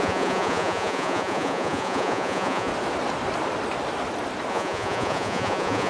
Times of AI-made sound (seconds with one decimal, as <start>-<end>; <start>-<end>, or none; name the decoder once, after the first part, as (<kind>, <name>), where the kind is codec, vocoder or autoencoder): 0.0-2.7 (vocoder, Vocos); 4.5-5.9